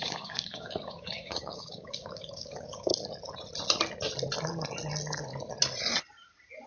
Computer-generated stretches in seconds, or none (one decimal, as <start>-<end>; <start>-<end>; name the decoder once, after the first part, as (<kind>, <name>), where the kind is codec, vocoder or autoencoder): 0.0-2.9 (codec, DAC)